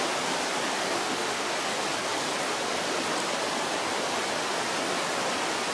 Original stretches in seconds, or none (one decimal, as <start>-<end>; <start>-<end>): 0.0-1.0; 1.5-5.7